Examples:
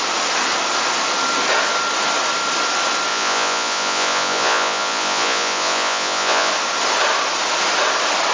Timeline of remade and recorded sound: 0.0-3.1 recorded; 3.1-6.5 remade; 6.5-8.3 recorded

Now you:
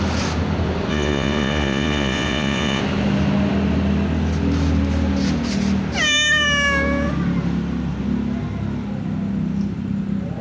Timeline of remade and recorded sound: 0.0-0.9 recorded; 0.9-2.8 remade; 2.8-10.4 recorded

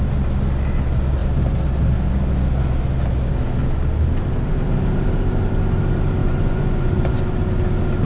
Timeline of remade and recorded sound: 0.0-6.2 recorded; 6.2-7.2 remade; 7.2-8.1 recorded

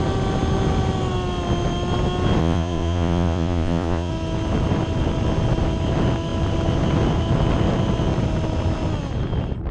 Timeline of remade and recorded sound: 0.0-2.4 recorded; 2.4-4.1 remade; 4.1-9.7 recorded

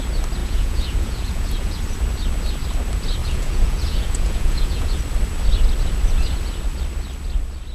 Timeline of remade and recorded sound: 0.0-0.4 recorded; 0.4-1.8 remade; 1.8-3.2 recorded; 3.2-5.0 remade; 5.0-7.7 recorded

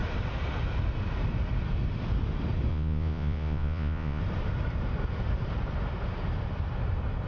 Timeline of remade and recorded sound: 0.0-2.7 recorded; 2.7-4.2 remade; 4.2-7.3 recorded

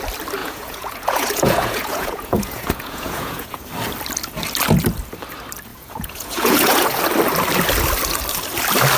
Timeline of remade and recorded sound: 0.0-0.4 recorded; 0.4-3.7 remade; 3.7-5.7 recorded; 5.7-7.0 remade; 7.0-9.0 recorded